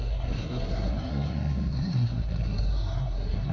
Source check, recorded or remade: remade